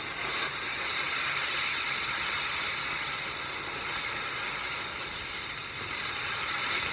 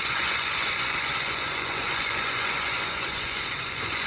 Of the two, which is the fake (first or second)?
second